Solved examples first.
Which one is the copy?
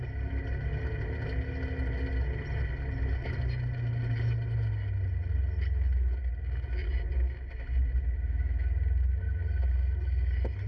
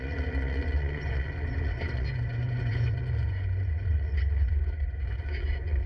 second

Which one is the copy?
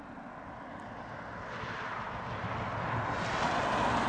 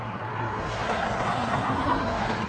second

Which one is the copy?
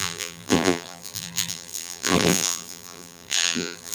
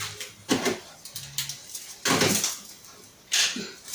first